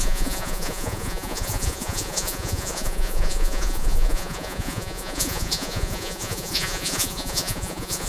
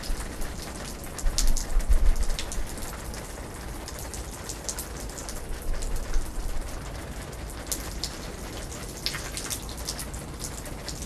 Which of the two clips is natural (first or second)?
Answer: second